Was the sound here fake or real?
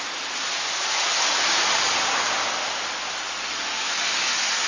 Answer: real